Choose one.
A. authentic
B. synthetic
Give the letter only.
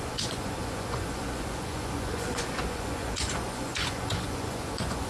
B